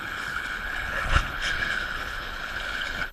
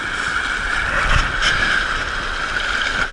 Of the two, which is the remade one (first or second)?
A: first